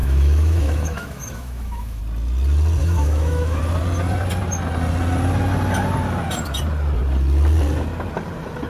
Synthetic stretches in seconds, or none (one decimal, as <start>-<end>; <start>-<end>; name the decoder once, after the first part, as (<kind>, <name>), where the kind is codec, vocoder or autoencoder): 0.0-2.0 (autoencoder, DAC-VAE); 2.8-3.6